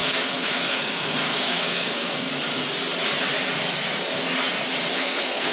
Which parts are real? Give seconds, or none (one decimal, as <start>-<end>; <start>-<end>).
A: 2.3-4.9